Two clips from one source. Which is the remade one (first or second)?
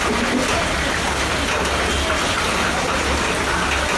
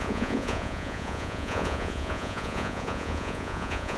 second